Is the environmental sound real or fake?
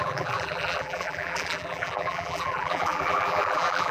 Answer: fake